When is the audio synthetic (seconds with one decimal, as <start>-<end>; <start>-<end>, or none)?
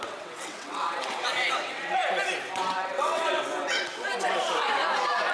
0.0-2.0; 2.5-4.1